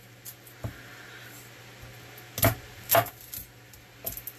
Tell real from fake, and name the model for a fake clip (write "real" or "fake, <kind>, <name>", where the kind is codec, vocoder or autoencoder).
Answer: real